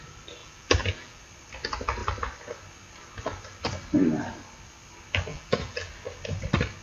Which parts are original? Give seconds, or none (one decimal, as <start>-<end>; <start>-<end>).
0.0-0.4; 1.2-5.3; 5.9-6.8